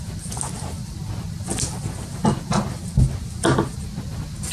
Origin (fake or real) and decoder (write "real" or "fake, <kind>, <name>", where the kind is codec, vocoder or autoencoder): real